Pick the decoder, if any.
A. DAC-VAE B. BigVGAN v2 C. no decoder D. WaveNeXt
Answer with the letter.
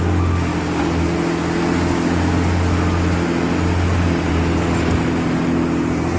C